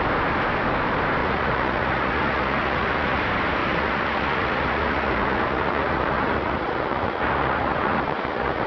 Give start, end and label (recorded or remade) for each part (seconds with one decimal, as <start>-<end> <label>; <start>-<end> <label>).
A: 0.0-1.2 recorded; 1.2-3.2 remade; 3.2-3.6 recorded; 3.6-8.7 remade